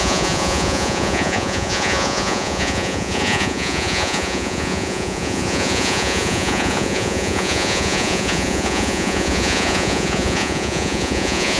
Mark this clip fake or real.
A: fake